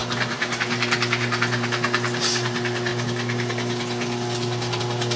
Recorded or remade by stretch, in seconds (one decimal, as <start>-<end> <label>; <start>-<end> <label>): 0.0-5.2 recorded